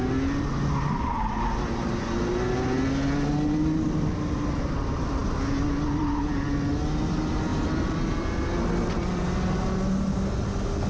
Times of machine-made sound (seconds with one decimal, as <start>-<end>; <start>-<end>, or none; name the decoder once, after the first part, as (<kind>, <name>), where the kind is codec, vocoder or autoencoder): none